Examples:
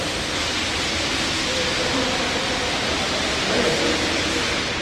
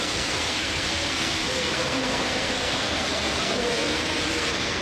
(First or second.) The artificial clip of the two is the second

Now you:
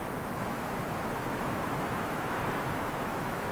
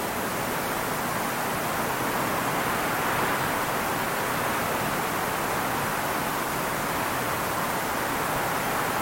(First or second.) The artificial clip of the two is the first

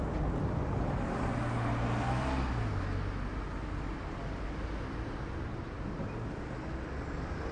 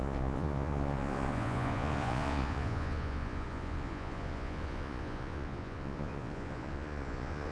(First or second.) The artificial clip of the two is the second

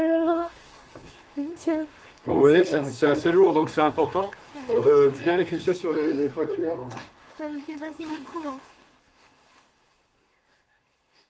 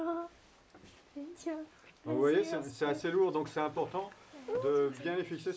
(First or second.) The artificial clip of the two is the first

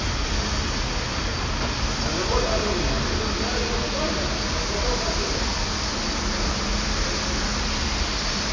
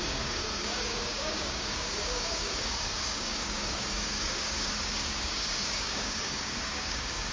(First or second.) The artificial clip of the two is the second